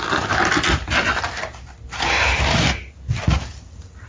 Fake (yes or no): yes